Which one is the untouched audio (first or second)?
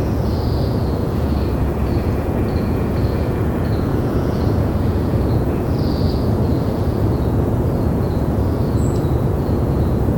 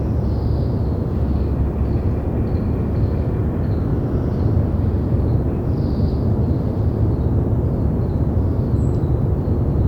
second